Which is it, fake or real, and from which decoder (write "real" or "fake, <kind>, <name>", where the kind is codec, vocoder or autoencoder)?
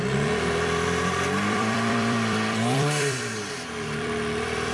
fake, vocoder, BigVGAN v2